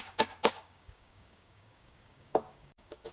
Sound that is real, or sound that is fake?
fake